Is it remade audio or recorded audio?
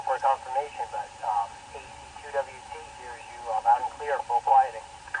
recorded